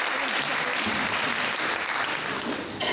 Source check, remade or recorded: recorded